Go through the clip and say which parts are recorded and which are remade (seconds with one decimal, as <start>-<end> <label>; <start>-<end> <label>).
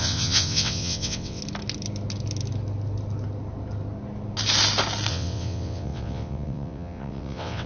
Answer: 0.0-1.4 remade; 1.4-5.1 recorded; 5.1-7.7 remade